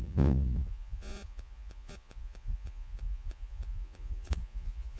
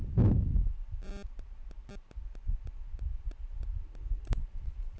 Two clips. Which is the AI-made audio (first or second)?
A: first